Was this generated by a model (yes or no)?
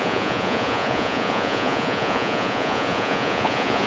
yes